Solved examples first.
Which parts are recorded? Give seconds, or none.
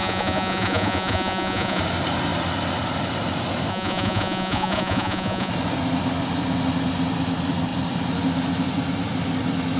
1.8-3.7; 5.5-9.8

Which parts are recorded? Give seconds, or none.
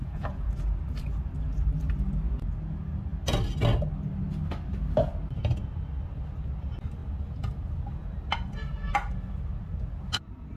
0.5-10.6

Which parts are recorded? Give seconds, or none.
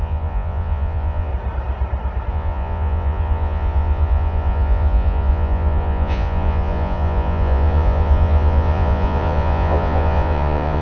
1.3-2.3